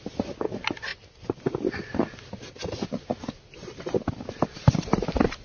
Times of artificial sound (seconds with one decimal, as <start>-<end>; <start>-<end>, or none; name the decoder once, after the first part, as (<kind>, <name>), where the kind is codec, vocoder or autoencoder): none